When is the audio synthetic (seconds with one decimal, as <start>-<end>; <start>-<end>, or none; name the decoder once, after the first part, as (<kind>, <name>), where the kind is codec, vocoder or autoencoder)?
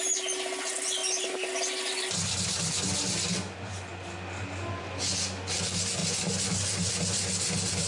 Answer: none